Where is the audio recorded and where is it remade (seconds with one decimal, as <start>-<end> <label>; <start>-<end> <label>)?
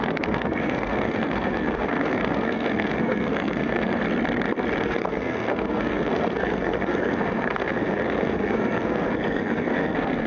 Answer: 0.0-4.0 remade; 4.0-4.8 recorded; 4.8-10.3 remade